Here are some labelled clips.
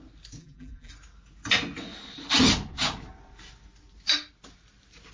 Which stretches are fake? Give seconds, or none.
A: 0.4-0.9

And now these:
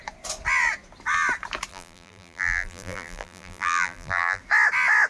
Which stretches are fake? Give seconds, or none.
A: 1.7-4.4

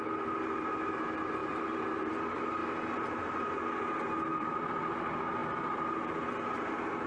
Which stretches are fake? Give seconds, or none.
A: 1.4-2.1; 2.6-3.4; 4.3-4.9

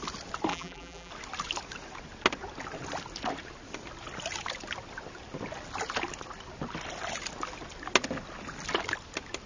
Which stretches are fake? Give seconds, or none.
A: 0.5-1.1

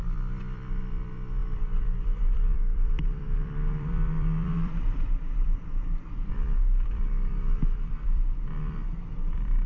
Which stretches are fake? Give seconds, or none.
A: 0.0-9.7

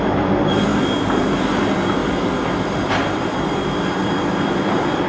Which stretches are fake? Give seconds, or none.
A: 2.0-5.1